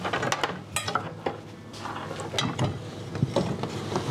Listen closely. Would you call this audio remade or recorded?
recorded